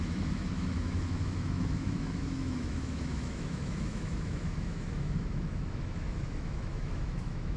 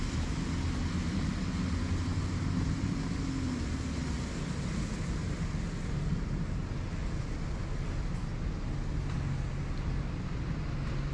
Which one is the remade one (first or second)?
first